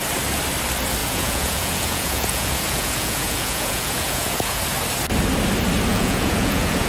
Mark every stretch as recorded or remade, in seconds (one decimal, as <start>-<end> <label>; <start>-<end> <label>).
0.0-1.0 recorded; 1.0-4.6 remade; 4.6-5.9 recorded; 5.9-6.9 remade